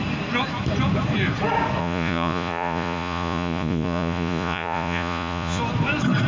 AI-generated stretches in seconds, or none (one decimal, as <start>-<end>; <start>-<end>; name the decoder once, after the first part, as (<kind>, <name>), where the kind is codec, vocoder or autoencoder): 1.8-5.6 (vocoder, Vocos)